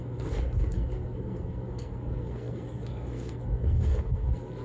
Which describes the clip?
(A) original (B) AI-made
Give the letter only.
B